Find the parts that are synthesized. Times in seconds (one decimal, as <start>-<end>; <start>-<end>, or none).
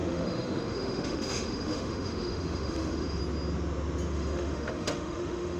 0.0-3.2; 4.1-5.6